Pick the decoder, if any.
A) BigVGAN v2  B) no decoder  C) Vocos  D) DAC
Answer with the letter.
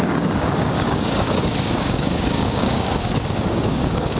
D